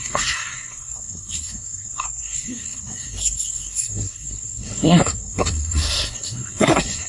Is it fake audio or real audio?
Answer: fake